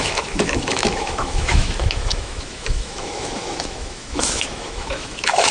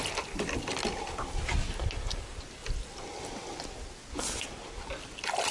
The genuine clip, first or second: second